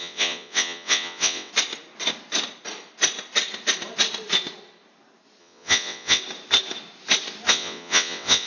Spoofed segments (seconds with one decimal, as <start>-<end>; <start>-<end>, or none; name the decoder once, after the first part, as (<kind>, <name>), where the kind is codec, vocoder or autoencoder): 0.0-1.5 (vocoder, WaveNeXt); 5.4-6.2; 7.5-8.5